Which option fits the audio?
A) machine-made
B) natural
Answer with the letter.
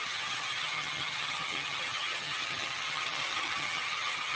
A